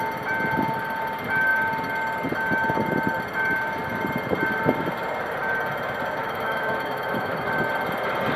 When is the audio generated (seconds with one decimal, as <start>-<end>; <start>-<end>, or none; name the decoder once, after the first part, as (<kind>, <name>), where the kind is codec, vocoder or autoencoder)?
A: 6.2-7.4 (autoencoder, DAC-VAE)